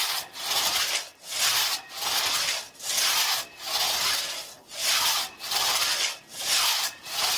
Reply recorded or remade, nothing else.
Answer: remade